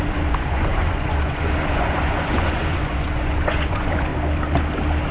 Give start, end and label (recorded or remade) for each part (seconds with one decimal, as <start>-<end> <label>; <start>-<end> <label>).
0.0-4.1 remade; 4.1-5.1 recorded